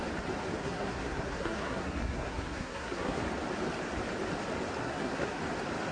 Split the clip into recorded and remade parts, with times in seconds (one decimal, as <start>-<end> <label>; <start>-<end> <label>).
0.0-0.6 recorded; 0.6-3.2 remade; 3.2-4.8 recorded; 4.8-5.4 remade; 5.4-5.9 recorded